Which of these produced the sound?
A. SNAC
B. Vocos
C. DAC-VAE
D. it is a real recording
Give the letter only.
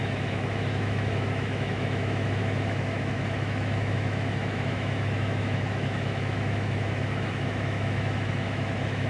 C